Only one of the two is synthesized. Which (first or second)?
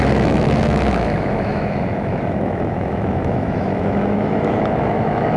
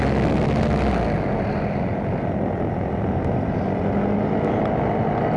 first